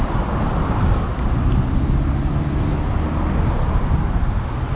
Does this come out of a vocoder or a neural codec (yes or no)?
no